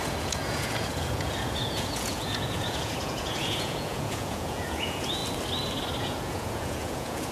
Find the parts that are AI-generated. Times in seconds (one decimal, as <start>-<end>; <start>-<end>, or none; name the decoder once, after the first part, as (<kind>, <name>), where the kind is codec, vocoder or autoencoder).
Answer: 0.0-5.2 (vocoder, Vocos); 6.0-7.3

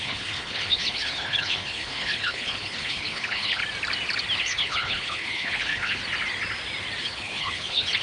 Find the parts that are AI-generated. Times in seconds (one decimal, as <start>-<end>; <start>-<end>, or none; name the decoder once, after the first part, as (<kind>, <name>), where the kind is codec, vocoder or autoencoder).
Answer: 0.0-3.6 (codec, HILCodec); 4.4-6.0; 7.0-8.0

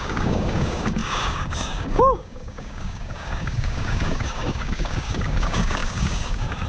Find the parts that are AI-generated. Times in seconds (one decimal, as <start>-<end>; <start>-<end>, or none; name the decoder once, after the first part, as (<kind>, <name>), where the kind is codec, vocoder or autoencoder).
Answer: 0.0-6.7 (codec, DAC)

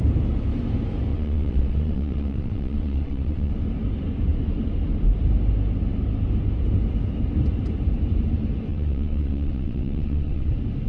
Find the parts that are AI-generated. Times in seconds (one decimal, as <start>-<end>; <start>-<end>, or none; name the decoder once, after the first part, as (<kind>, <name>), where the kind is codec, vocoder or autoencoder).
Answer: 1.1-3.5 (vocoder, WaveNeXt); 8.7-10.5

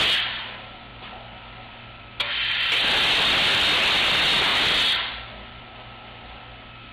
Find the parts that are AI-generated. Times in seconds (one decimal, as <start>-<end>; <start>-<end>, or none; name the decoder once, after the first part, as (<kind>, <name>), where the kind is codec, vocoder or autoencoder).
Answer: none